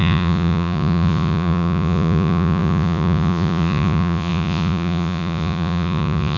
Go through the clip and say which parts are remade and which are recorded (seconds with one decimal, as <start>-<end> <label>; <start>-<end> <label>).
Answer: 0.0-6.4 remade